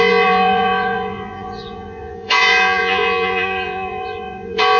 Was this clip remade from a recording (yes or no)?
yes